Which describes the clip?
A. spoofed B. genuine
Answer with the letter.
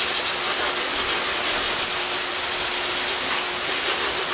B